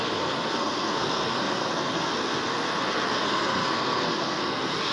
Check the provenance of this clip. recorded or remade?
remade